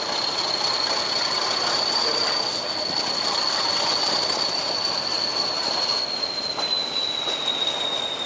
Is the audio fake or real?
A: real